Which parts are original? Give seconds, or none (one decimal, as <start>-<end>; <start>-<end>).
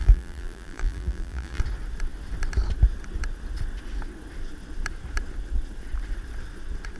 1.6-7.0